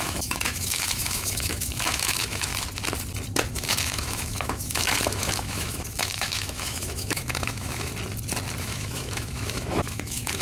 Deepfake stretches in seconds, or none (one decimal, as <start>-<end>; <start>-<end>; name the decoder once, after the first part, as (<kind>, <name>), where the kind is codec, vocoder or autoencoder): 0.0-2.5 (autoencoder, DAC-VAE); 3.5-7.9; 8.6-10.4